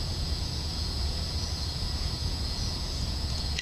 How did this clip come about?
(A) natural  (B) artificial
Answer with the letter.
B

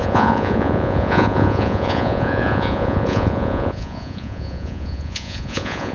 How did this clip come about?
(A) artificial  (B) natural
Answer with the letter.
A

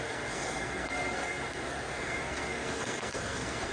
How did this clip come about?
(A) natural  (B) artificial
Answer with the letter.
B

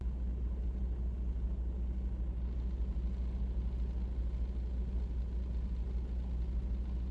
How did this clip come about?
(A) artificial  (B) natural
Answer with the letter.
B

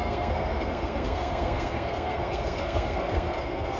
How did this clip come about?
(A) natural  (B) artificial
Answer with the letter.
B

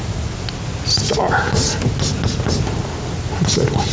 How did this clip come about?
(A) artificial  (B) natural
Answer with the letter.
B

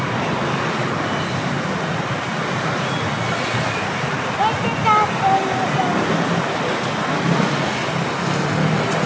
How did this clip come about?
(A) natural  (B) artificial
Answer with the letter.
A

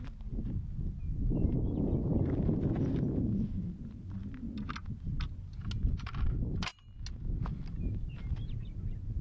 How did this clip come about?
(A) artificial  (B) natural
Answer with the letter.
B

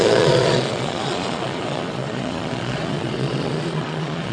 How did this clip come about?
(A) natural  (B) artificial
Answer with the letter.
B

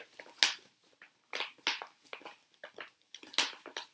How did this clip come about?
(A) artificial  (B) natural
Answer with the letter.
B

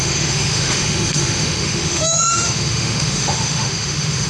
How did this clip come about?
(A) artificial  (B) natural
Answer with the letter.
A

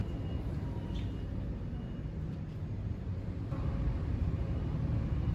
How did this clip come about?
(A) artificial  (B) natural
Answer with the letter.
B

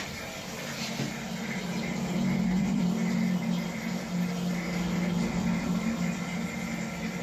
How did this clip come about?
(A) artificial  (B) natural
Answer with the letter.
A